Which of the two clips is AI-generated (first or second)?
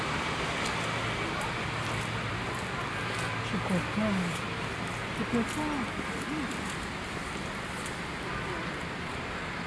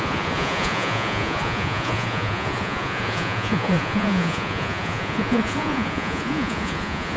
second